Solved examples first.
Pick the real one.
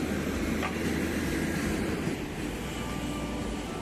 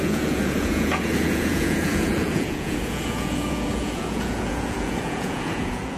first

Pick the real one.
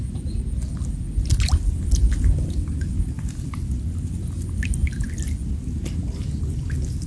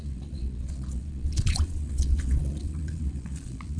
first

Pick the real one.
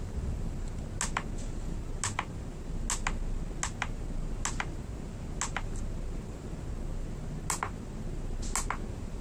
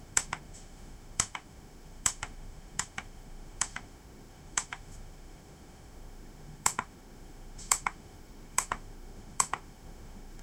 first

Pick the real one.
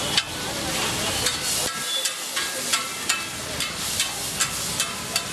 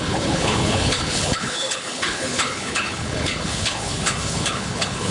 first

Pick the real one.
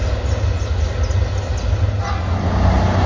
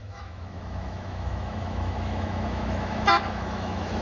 first